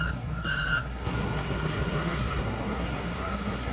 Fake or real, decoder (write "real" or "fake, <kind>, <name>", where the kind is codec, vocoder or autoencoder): fake, codec, SNAC